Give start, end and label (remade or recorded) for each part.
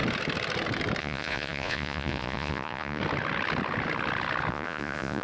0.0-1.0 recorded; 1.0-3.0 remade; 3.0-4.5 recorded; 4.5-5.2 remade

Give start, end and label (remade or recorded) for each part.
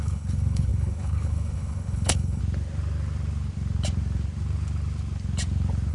0.0-2.4 remade; 2.4-5.9 recorded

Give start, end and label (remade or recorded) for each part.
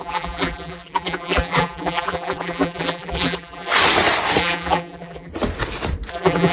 0.0-3.7 remade; 3.7-4.4 recorded; 4.4-5.3 remade; 5.3-6.1 recorded; 6.1-6.5 remade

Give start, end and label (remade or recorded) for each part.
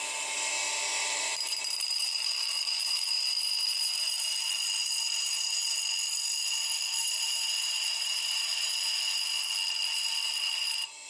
0.0-1.0 recorded; 1.0-3.2 remade; 3.2-7.0 recorded; 7.0-8.6 remade; 8.6-11.1 recorded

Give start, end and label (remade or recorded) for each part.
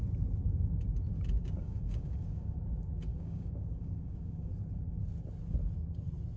0.0-1.4 recorded; 1.4-2.6 remade; 2.6-3.1 recorded; 3.1-4.5 remade; 4.5-6.4 recorded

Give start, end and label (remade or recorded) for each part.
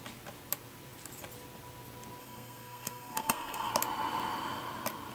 0.0-2.2 recorded; 2.2-3.7 remade; 3.7-5.1 recorded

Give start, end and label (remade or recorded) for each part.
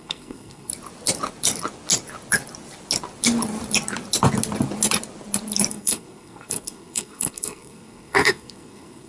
0.0-0.7 remade; 0.7-5.7 recorded; 5.7-9.1 remade